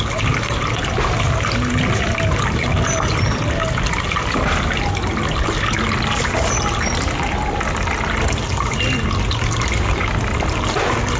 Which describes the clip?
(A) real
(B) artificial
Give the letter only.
A